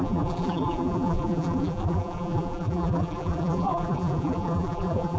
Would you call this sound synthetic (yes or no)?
yes